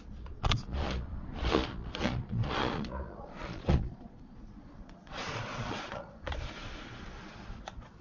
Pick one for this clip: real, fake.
fake